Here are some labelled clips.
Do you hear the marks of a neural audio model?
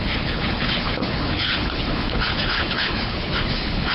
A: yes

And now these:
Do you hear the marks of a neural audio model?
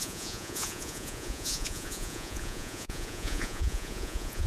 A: yes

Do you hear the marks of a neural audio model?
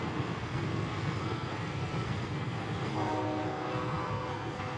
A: yes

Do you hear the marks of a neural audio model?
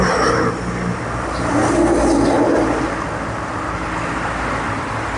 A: no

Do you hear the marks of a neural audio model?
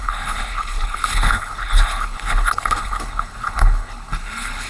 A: yes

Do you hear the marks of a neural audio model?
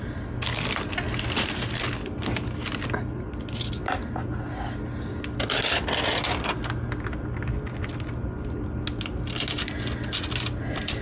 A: no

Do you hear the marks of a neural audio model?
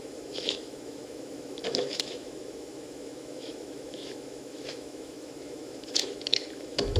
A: yes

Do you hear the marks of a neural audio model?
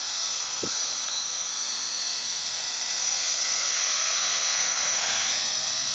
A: yes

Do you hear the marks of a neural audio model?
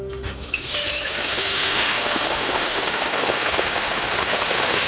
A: yes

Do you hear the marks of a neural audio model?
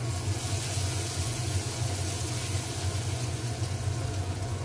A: yes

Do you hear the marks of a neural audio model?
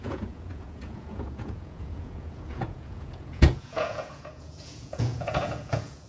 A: yes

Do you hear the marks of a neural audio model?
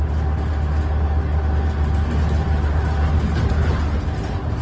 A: no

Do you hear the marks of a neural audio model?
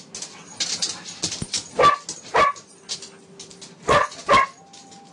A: no